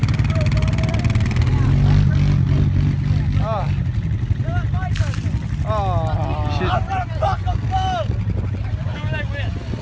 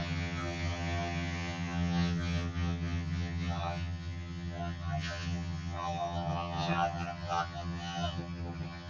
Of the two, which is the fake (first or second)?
second